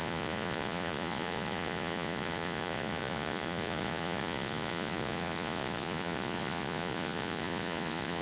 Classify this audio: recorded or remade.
remade